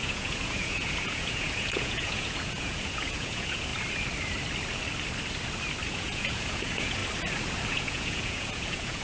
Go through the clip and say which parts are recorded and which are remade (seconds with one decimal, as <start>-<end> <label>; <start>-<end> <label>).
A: 0.0-3.7 remade; 3.7-5.9 recorded; 5.9-7.0 remade; 7.0-7.7 recorded; 7.7-9.0 remade